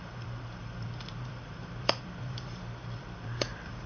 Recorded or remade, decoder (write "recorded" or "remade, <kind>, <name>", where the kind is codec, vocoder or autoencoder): remade, vocoder, BigVGAN v2